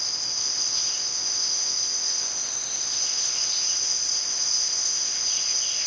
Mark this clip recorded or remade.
remade